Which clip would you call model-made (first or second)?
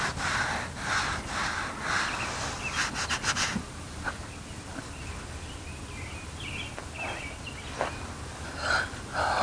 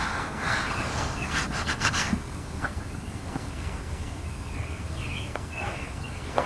second